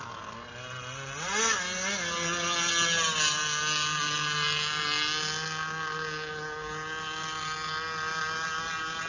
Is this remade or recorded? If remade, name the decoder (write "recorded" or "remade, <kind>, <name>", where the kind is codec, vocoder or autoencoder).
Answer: recorded